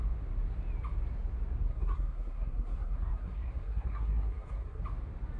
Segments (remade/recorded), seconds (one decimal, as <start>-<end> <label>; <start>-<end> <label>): 0.0-1.6 recorded; 1.6-4.8 remade; 4.8-5.4 recorded